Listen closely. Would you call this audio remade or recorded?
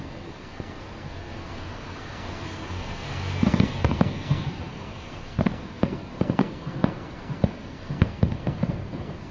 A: remade